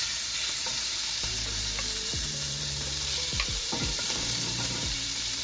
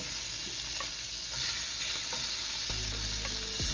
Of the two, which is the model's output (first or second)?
first